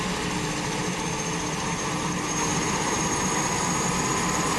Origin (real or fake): real